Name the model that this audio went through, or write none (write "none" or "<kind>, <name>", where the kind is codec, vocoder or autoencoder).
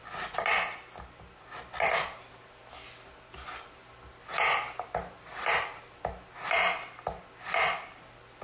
none